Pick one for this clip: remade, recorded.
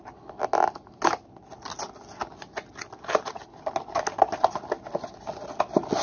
recorded